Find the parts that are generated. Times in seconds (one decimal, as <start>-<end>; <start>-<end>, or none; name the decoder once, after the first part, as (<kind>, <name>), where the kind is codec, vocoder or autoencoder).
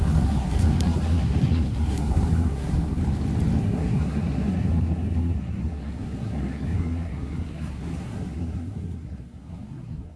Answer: 0.0-3.0 (codec, SNAC); 3.6-10.2